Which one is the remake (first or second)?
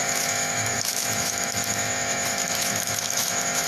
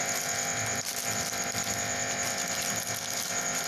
first